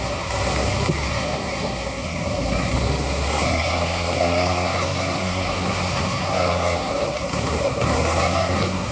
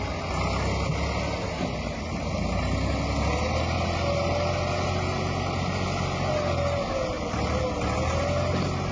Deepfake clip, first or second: first